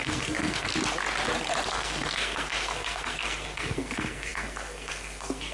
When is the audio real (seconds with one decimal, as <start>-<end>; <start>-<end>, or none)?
0.7-1.7

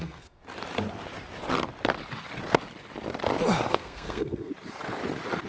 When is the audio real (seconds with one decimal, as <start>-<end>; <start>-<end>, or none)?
0.4-3.7; 4.5-5.5

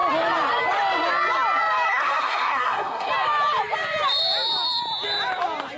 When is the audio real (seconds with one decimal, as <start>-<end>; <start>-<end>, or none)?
0.0-1.9; 3.1-5.8

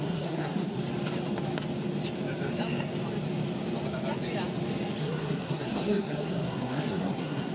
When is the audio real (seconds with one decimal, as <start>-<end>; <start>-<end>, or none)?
0.8-5.0

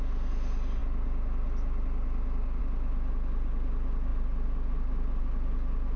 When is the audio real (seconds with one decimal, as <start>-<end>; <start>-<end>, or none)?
0.0-6.0

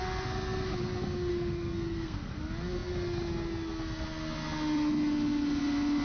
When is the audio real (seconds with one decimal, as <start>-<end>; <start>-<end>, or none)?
0.0-1.3; 2.4-6.0

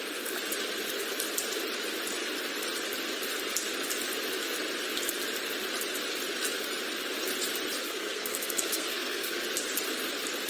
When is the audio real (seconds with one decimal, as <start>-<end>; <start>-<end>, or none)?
0.0-7.8; 9.4-10.5

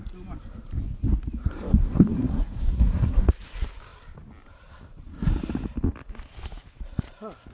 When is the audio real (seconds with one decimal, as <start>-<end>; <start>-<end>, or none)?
0.0-1.8; 3.3-7.5